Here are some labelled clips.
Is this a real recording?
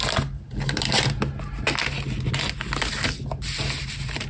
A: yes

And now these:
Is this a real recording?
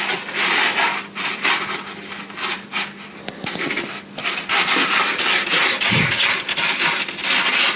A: yes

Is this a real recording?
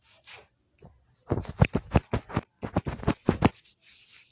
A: yes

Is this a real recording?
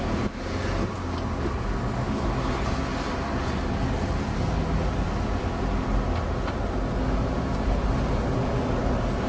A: yes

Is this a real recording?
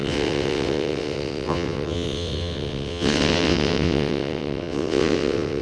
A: no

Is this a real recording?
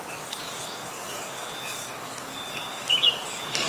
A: no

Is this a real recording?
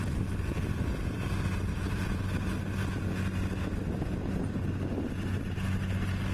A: yes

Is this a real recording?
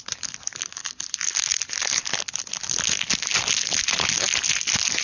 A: yes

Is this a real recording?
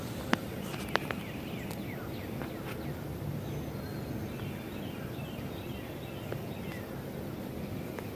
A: yes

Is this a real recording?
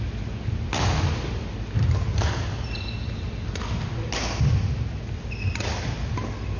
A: yes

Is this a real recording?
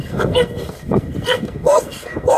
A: no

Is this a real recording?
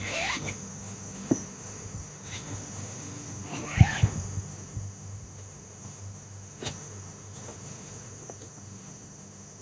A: no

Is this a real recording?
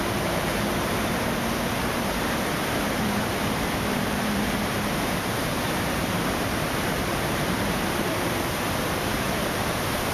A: no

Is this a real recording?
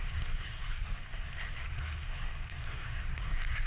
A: no